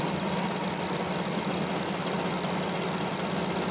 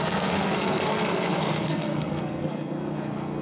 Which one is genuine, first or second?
first